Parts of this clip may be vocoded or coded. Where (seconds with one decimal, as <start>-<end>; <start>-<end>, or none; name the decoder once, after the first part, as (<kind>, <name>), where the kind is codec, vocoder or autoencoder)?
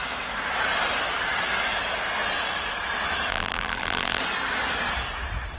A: 3.3-4.2 (vocoder, BigVGAN v2)